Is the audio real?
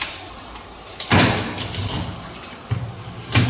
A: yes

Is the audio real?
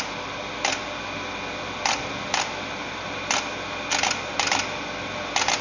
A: yes